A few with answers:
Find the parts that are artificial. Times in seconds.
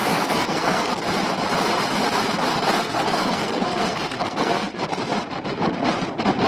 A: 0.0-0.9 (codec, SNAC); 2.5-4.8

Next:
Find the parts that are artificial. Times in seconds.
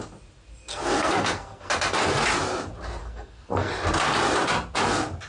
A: 0.7-1.7 (codec, SNAC); 3.0-3.7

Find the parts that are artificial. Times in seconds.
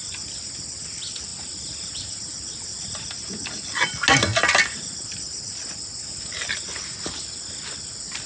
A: none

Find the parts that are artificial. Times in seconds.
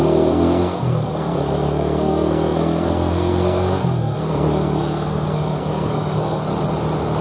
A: 0.0-6.5 (codec, SNAC)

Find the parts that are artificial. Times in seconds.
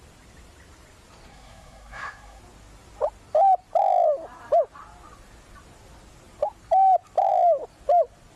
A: 1.3-2.4 (codec, SNAC)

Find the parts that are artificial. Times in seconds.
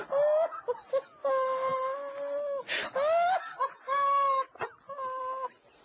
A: none